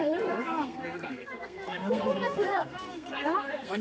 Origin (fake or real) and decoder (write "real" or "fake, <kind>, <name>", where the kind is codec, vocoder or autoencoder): fake, codec, SNAC